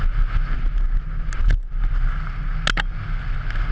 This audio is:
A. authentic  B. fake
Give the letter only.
A